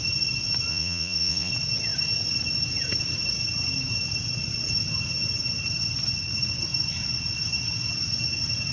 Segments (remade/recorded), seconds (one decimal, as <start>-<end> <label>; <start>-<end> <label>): 0.0-0.7 recorded; 0.7-1.5 remade; 1.5-8.7 recorded